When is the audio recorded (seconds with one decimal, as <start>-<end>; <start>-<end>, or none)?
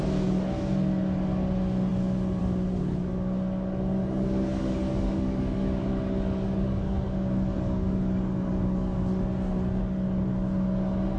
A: 0.0-4.0; 9.0-11.2